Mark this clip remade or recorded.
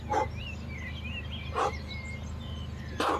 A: recorded